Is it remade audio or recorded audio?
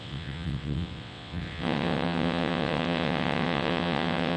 remade